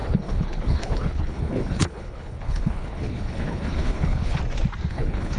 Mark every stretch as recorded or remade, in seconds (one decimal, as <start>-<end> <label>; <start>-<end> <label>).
0.0-4.4 remade; 4.4-4.9 recorded; 4.9-5.4 remade